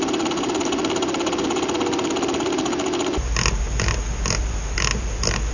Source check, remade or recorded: recorded